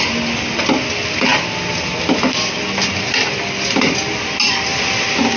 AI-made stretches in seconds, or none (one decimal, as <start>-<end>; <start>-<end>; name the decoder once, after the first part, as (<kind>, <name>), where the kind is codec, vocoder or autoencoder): none